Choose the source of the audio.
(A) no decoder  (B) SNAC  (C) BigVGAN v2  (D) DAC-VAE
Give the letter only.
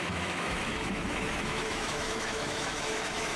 D